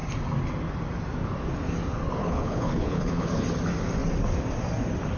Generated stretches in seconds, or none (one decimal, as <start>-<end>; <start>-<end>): 2.2-3.4